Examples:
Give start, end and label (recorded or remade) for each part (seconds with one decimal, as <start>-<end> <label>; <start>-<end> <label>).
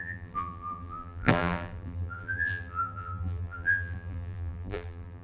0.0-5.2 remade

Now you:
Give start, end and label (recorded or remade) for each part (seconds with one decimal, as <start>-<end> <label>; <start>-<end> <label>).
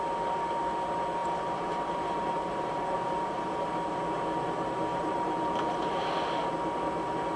0.0-1.2 recorded; 1.2-3.7 remade; 3.7-4.9 recorded; 4.9-6.0 remade; 6.0-7.4 recorded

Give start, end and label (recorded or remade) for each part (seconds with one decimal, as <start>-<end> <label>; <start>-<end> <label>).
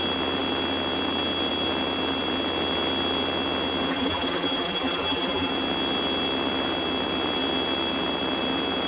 0.0-3.9 recorded; 3.9-5.5 remade; 5.5-8.9 recorded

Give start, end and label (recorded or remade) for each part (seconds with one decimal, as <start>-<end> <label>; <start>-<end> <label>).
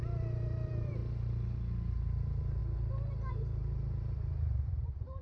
0.0-1.0 remade; 1.0-1.9 recorded; 1.9-2.6 remade; 2.6-3.3 recorded; 3.3-5.2 remade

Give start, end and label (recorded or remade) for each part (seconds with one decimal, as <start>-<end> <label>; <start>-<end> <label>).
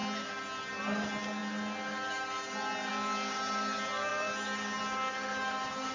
0.0-5.9 recorded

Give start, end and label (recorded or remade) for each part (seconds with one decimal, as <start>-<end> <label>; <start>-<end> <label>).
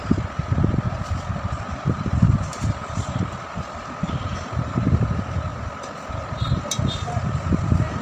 0.0-2.5 recorded; 2.5-3.8 remade; 3.8-4.3 recorded; 4.3-5.0 remade; 5.0-5.5 recorded; 5.5-6.1 remade; 6.1-8.0 recorded